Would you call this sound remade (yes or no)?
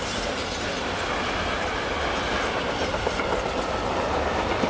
no